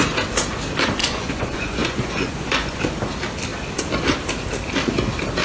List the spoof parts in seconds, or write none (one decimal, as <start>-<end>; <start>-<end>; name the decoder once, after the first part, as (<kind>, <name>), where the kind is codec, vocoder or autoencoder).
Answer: 1.0-2.8 (vocoder, Vocos)